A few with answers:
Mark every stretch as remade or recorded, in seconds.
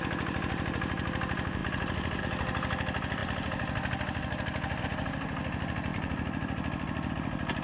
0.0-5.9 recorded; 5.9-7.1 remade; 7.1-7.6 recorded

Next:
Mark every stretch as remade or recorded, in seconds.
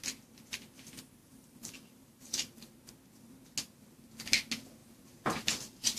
0.0-1.2 recorded; 1.2-2.7 remade; 2.7-6.0 recorded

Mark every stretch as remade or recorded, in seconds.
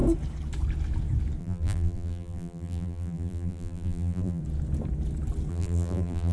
0.0-1.4 recorded; 1.4-4.4 remade; 4.4-5.5 recorded; 5.5-6.3 remade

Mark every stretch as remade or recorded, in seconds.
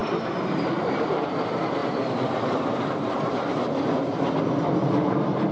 0.0-1.3 remade; 1.3-1.8 recorded; 1.8-4.3 remade; 4.3-5.5 recorded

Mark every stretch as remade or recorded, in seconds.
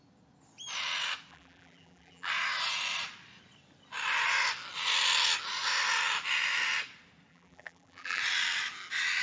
0.0-1.3 recorded; 1.3-2.3 remade; 2.3-7.3 recorded; 7.3-8.2 remade; 8.2-9.2 recorded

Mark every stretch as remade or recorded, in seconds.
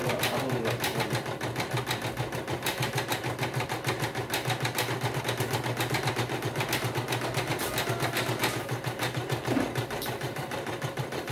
0.0-8.4 recorded; 8.4-11.3 remade